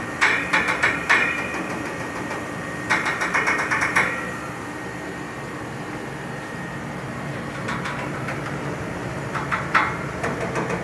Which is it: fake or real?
fake